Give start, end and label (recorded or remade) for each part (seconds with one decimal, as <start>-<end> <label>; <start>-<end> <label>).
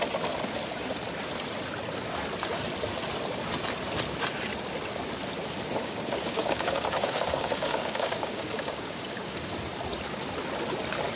0.0-5.8 recorded; 5.8-9.5 remade; 9.5-11.2 recorded